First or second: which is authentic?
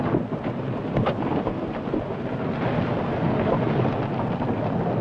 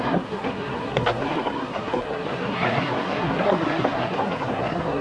first